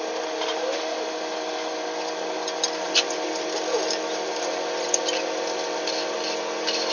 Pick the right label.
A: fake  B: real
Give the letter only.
B